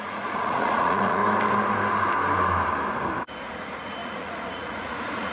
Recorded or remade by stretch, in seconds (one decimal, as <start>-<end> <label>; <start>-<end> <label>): 0.0-1.2 remade; 1.2-3.2 recorded; 3.2-5.3 remade

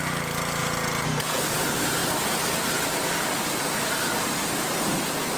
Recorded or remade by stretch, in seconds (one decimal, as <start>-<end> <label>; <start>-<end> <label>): 0.0-0.6 recorded; 0.6-1.4 remade; 1.4-5.4 recorded

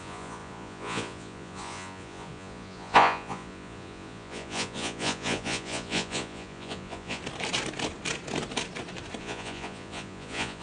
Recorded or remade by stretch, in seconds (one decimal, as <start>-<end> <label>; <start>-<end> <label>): 0.0-7.2 remade; 7.2-9.2 recorded; 9.2-10.6 remade